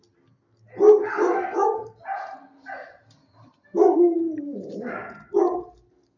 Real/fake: real